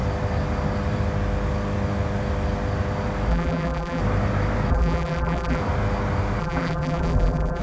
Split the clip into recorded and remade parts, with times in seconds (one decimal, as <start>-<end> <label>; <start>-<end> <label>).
0.0-3.3 recorded; 3.3-4.0 remade; 4.0-4.7 recorded; 4.7-5.6 remade; 5.6-6.4 recorded; 6.4-7.6 remade